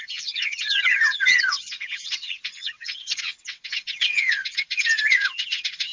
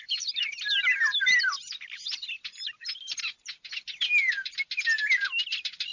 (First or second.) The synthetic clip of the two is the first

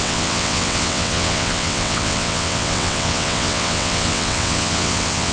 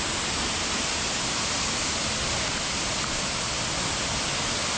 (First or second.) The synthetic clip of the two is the first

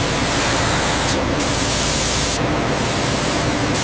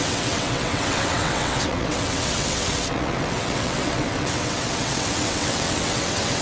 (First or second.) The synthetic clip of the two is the second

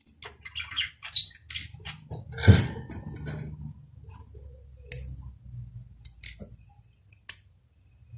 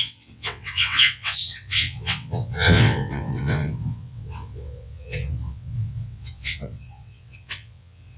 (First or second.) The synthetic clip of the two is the second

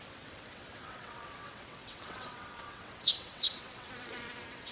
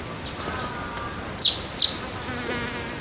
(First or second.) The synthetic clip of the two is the first